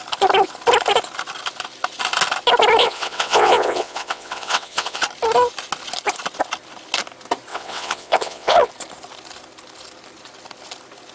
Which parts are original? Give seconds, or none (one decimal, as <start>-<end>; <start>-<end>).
0.0-2.8; 5.0-7.5; 8.7-11.1